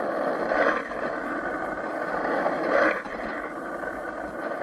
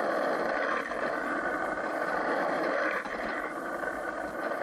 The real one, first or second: first